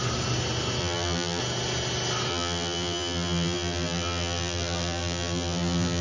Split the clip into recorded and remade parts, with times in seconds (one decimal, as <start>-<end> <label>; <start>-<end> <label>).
0.0-0.8 recorded; 0.8-1.4 remade; 1.4-2.3 recorded; 2.3-6.0 remade